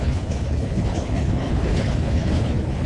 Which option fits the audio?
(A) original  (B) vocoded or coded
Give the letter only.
B